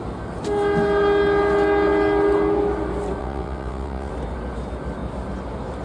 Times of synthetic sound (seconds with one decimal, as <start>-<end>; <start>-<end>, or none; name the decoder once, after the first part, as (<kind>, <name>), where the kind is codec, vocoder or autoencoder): 3.2-4.1 (vocoder, WaveNeXt)